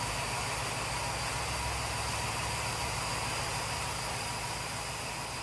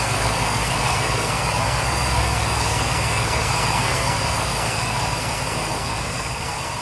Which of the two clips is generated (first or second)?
second